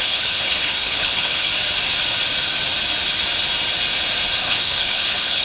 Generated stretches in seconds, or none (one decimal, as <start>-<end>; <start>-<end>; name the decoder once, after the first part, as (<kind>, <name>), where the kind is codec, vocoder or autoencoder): 0.0-1.5 (codec, HILCodec); 4.4-5.4